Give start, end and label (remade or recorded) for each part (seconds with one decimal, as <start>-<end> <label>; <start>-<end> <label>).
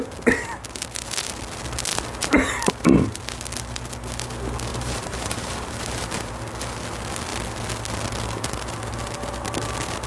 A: 0.0-4.7 recorded; 4.7-6.3 remade; 6.3-10.1 recorded